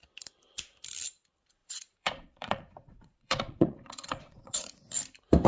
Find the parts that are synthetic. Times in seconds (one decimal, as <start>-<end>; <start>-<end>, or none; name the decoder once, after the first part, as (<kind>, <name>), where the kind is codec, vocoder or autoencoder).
1.6-4.9 (vocoder, Vocos)